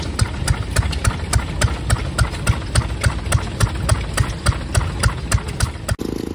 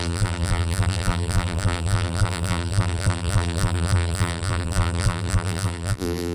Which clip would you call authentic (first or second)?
first